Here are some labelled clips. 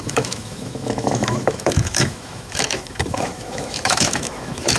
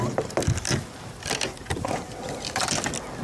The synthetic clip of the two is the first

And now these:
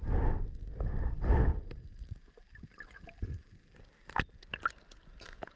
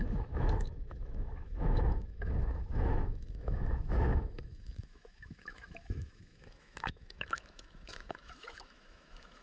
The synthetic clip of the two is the second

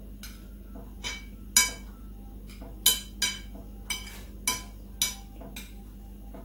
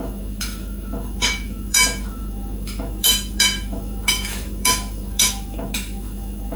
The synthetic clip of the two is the second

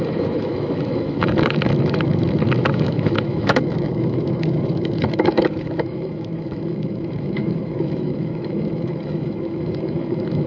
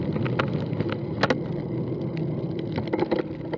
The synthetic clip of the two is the first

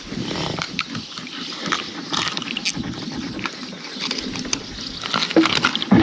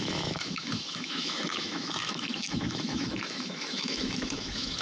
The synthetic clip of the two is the second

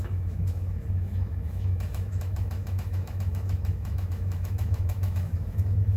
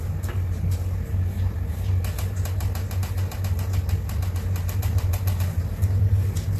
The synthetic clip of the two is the first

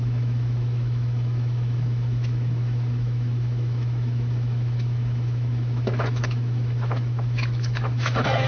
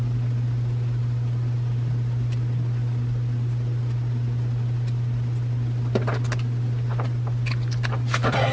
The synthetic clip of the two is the first